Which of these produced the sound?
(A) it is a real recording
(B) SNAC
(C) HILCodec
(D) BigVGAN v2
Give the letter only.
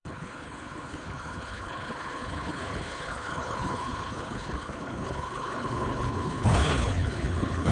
C